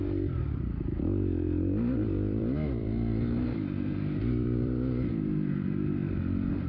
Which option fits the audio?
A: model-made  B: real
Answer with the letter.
A